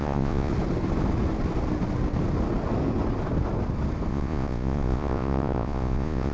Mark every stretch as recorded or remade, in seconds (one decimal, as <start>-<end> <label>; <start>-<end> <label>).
0.0-0.5 remade; 0.5-4.1 recorded; 4.1-6.3 remade